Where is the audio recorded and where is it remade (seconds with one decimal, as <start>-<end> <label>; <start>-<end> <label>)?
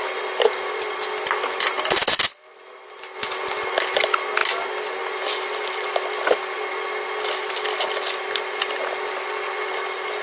0.0-10.2 recorded